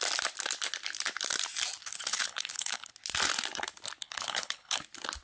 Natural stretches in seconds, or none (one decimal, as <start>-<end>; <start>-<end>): 0.0-1.8; 2.9-4.0; 4.8-5.2